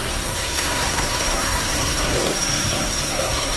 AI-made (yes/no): yes